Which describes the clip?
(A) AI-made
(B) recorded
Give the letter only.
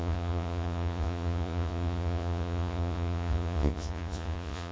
A